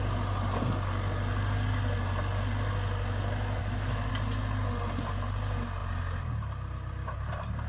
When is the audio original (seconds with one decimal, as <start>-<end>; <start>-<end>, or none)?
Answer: 0.0-3.6; 4.1-7.7